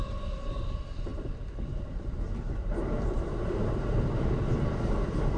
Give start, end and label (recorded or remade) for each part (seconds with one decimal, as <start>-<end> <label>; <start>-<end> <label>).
0.0-5.4 recorded